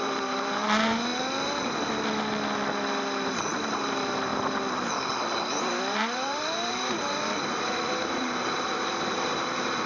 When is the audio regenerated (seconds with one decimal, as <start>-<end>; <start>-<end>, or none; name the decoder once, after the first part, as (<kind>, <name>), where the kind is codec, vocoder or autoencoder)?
0.0-1.1 (vocoder, BigVGAN v2); 3.9-4.3; 5.4-9.9